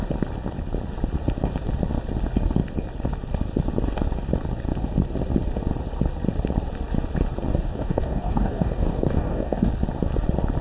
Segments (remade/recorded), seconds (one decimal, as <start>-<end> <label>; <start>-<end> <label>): 0.0-7.5 recorded; 7.5-9.7 remade; 9.7-10.6 recorded